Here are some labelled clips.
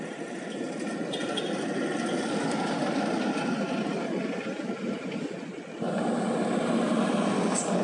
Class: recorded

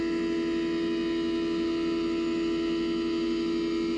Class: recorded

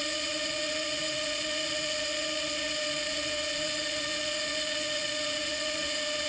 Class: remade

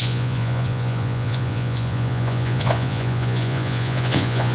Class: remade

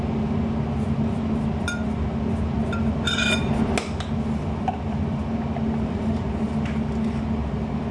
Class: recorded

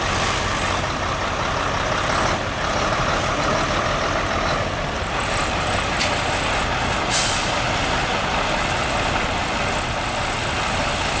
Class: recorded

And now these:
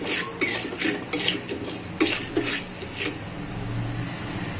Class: recorded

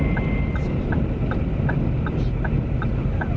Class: recorded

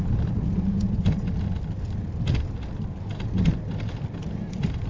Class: recorded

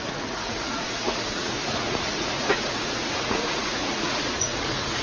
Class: remade